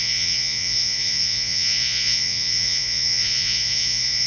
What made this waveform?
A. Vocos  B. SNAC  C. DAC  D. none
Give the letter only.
A